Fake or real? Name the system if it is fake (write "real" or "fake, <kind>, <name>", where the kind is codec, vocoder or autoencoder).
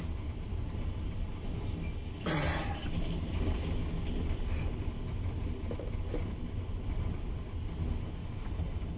real